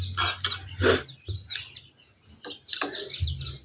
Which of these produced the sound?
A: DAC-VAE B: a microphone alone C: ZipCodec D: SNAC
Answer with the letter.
B